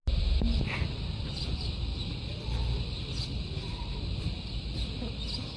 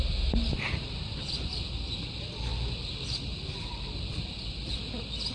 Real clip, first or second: first